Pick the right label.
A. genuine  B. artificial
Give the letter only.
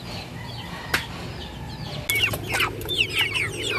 A